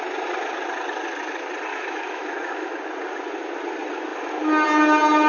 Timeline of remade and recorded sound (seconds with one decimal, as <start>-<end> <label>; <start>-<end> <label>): 0.0-1.7 recorded; 1.7-2.7 remade; 2.7-5.3 recorded